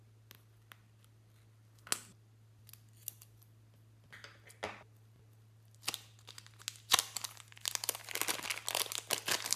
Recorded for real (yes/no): yes